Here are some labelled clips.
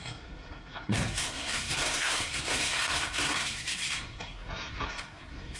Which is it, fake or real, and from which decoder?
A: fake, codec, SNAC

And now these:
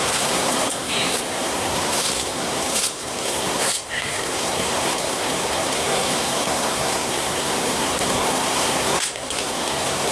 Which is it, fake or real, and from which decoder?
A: fake, codec, SNAC